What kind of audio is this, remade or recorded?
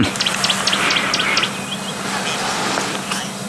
recorded